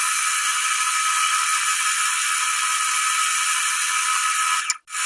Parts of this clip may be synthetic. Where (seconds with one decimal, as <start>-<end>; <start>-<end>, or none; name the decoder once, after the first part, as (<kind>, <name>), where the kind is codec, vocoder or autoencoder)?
none